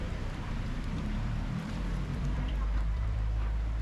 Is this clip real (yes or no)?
no